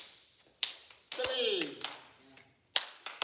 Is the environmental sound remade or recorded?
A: recorded